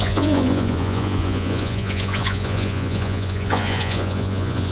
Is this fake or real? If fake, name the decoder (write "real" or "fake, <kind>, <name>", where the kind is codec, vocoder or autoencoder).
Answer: fake, vocoder, Vocos